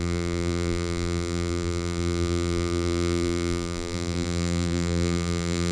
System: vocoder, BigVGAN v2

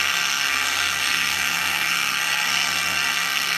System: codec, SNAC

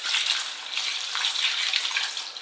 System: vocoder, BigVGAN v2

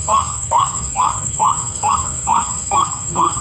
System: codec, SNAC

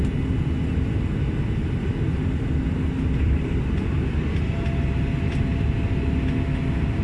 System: none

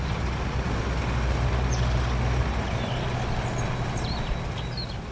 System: none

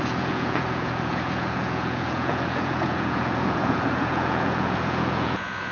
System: vocoder, Vocos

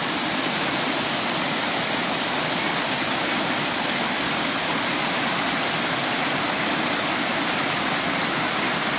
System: none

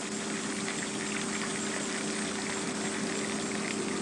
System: none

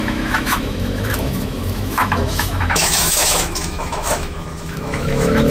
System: autoencoder, DAC-VAE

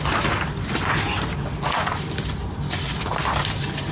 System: none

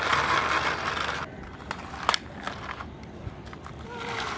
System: none